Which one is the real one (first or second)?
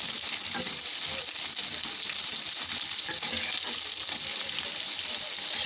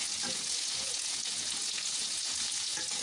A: first